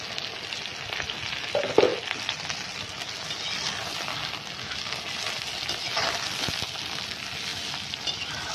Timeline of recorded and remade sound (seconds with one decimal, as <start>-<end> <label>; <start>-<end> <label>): 0.0-8.5 recorded